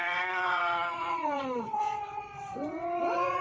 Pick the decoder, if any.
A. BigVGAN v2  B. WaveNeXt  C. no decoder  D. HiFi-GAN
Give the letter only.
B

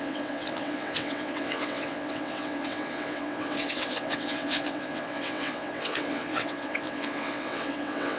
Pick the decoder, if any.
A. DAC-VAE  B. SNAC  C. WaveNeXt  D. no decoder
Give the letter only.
C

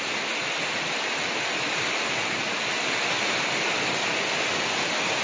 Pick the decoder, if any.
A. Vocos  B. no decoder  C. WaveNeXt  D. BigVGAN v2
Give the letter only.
B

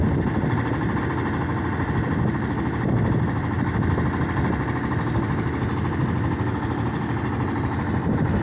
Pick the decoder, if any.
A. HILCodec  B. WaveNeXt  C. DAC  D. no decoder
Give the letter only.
D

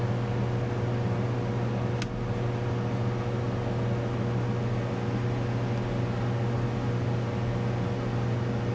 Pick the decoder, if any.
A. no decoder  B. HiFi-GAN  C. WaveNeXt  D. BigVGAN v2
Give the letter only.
A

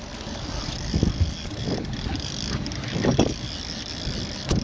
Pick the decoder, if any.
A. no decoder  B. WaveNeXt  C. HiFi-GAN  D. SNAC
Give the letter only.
A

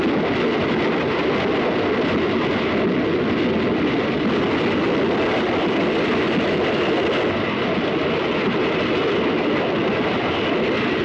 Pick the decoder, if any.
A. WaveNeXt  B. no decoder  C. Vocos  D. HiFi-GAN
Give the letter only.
B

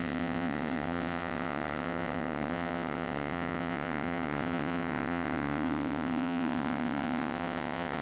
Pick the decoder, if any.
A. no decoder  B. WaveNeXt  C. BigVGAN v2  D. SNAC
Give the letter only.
B